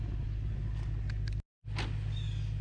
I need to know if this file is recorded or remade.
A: recorded